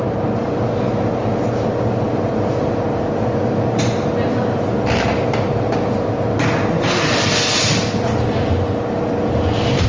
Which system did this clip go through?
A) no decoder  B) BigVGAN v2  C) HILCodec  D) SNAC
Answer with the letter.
A